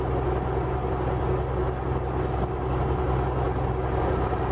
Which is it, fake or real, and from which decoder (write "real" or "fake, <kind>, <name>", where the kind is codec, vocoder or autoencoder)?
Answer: real